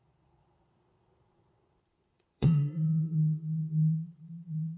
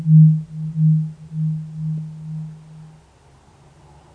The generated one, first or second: first